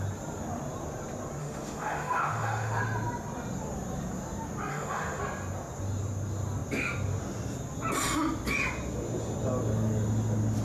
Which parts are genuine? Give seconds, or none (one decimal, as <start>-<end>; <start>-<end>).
0.0-1.4; 2.8-4.7; 5.2-10.6